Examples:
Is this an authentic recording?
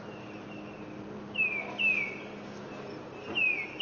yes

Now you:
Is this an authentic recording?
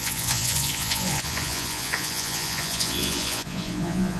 no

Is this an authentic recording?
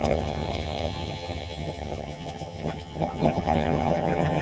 no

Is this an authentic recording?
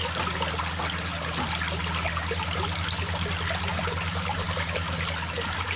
yes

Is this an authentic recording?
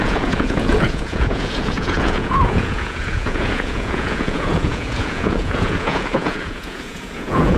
no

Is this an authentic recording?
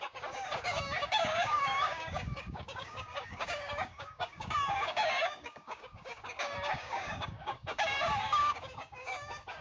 no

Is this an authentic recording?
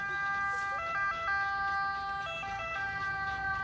yes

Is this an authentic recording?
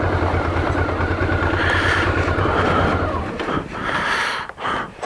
no